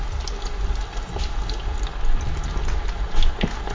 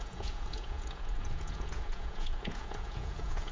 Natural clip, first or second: first